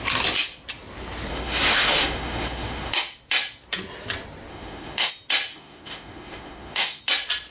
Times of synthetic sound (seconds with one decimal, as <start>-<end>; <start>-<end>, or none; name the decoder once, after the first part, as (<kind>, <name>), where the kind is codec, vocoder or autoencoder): 1.3-2.9 (autoencoder, DAC-VAE); 4.5-5.1; 5.5-7.0